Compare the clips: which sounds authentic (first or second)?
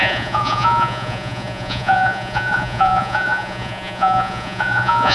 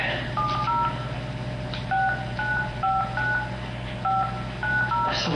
second